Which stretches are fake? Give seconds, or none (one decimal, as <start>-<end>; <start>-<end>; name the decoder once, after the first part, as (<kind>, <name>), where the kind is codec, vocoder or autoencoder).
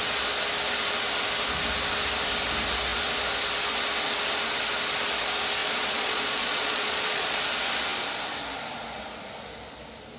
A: 5.6-7.4 (vocoder, Vocos)